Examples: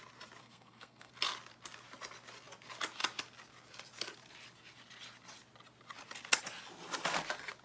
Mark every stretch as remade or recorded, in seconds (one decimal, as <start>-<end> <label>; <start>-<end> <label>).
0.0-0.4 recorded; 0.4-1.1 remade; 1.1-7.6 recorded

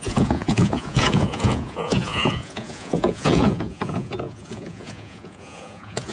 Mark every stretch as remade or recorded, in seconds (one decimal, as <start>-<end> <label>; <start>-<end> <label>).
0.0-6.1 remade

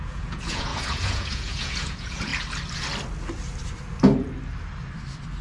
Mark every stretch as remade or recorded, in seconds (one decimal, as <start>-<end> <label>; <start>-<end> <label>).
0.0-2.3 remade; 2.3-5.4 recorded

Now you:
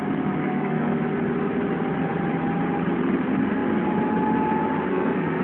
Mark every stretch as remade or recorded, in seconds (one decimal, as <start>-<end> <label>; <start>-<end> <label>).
0.0-0.4 recorded; 0.4-1.0 remade; 1.0-4.9 recorded; 4.9-5.4 remade

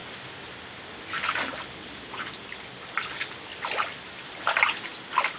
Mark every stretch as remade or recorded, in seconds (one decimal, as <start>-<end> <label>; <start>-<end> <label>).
0.0-3.5 recorded; 3.5-4.4 remade; 4.4-5.4 recorded

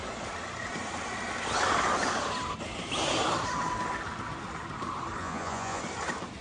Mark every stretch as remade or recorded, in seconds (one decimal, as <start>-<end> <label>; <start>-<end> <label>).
0.0-5.2 recorded; 5.2-5.8 remade; 5.8-6.4 recorded

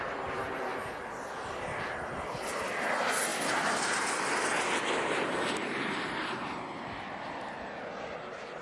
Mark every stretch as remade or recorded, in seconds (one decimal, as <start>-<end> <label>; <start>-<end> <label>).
0.0-8.6 recorded

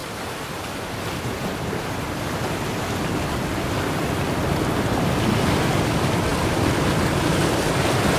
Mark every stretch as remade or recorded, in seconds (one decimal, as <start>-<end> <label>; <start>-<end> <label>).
0.0-2.8 remade; 2.8-8.2 recorded